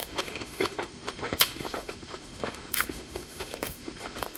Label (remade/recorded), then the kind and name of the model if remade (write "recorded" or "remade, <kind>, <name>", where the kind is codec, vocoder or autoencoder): remade, autoencoder, DAC-VAE